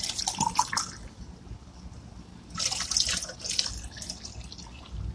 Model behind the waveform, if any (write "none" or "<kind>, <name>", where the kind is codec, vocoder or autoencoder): none